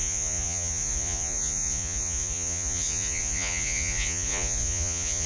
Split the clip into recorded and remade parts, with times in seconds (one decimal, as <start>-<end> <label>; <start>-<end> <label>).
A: 0.0-5.3 remade